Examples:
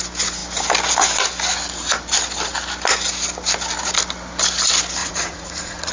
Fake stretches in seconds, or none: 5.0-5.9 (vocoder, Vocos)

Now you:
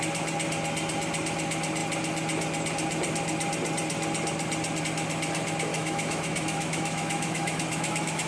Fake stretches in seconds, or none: 5.7-8.3 (autoencoder, DAC-VAE)

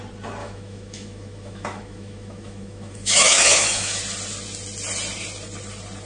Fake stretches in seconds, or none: 0.4-4.0 (autoencoder, DAC-VAE)

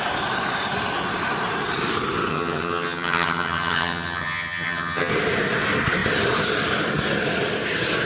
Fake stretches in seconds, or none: 2.3-5.1 (vocoder, HiFi-GAN)

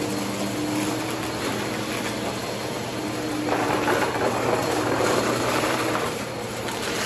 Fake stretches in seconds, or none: 2.4-7.1 (vocoder, BigVGAN v2)